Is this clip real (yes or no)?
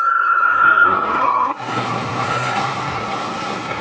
no